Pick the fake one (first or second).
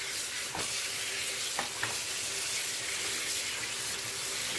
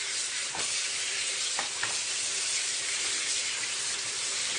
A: second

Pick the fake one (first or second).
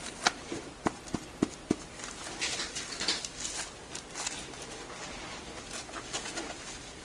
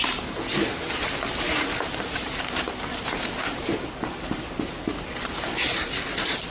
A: second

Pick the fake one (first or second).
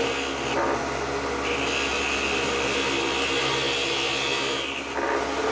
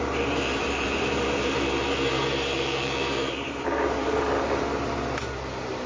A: second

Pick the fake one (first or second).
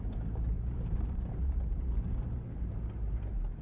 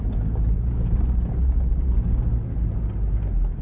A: first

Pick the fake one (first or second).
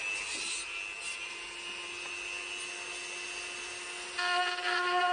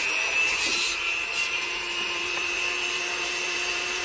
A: second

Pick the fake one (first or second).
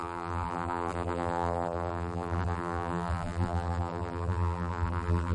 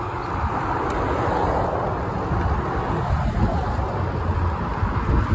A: first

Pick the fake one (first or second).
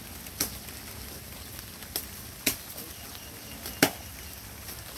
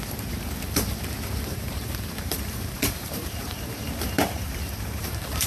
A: second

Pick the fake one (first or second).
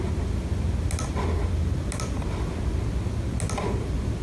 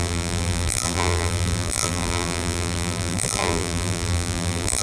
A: second